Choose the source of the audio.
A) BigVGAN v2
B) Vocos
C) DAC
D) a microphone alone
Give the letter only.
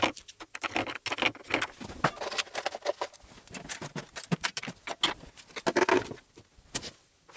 D